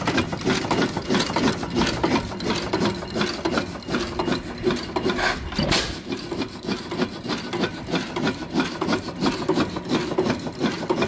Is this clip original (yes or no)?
yes